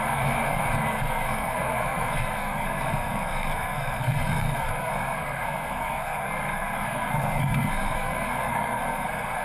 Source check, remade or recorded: remade